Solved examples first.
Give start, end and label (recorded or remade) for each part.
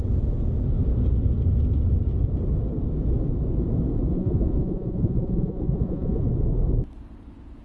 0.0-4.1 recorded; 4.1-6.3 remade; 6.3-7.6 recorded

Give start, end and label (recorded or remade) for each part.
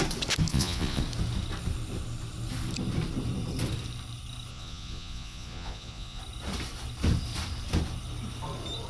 0.0-0.5 recorded; 0.5-1.0 remade; 1.0-4.5 recorded; 4.5-6.2 remade; 6.2-8.9 recorded